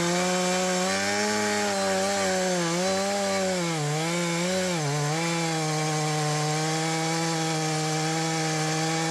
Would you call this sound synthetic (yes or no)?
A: no